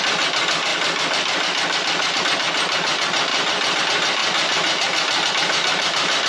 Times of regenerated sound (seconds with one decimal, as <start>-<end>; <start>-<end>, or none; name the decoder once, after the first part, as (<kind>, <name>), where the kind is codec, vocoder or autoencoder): 0.7-2.2 (vocoder, BigVGAN v2); 3.3-3.8